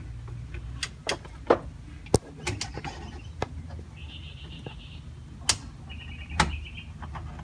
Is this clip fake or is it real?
real